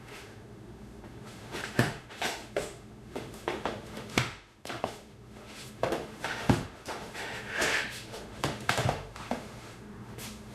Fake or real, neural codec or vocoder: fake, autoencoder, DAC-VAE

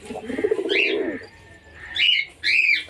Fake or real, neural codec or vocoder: real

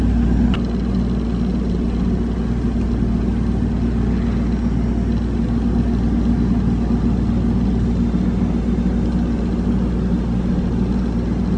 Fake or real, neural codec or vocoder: real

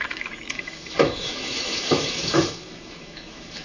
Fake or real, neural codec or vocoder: fake, autoencoder, DAC-VAE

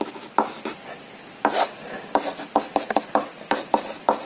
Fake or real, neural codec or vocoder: real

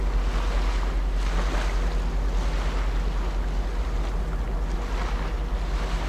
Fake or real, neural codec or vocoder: real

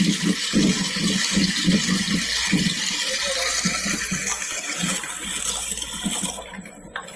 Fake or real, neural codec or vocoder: real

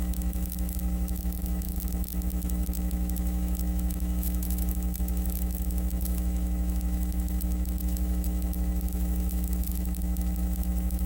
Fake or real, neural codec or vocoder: fake, autoencoder, DAC-VAE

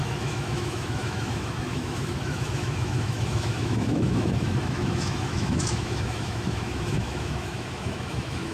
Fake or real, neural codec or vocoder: fake, autoencoder, DAC-VAE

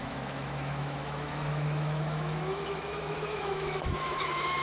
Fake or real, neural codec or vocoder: fake, autoencoder, DAC-VAE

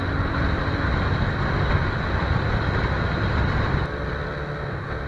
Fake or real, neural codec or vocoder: real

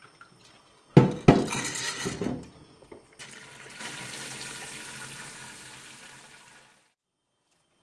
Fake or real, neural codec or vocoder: real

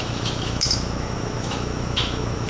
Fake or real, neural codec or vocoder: fake, autoencoder, DAC-VAE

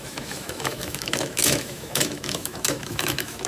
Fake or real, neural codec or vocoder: fake, autoencoder, DAC-VAE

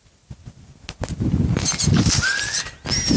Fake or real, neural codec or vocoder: real